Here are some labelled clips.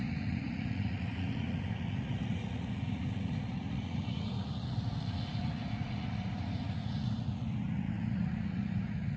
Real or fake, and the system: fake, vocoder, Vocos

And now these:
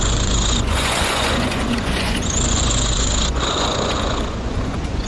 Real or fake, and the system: fake, vocoder, Vocos